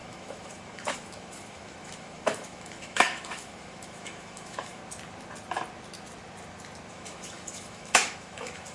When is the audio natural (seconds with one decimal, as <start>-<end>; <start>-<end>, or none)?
4.8-6.9